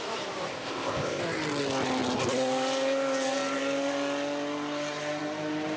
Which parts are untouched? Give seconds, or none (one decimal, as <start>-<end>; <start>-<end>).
0.0-0.5; 1.2-5.8